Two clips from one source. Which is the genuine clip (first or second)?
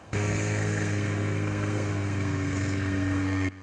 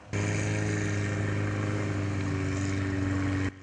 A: second